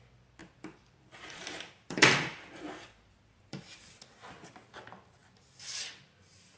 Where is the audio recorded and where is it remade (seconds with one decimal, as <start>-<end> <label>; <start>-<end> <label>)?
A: 0.0-0.4 recorded; 0.4-3.6 remade; 3.6-6.6 recorded